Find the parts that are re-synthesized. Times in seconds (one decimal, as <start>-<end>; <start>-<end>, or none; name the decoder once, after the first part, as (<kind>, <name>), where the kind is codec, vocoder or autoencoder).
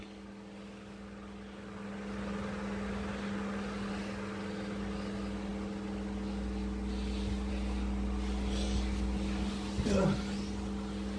none